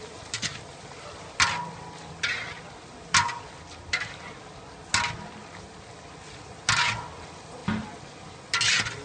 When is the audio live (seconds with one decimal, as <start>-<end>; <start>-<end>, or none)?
0.0-9.0